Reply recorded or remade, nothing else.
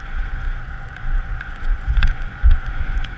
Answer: remade